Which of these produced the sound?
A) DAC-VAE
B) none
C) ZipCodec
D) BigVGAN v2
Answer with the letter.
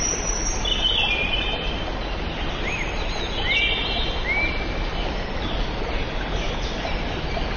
B